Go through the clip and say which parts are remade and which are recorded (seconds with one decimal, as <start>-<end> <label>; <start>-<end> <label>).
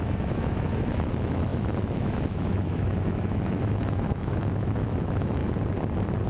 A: 0.0-5.4 remade; 5.4-6.3 recorded